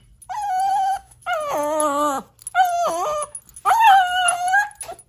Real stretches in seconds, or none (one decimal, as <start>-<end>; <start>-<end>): 0.0-0.7; 1.2-5.1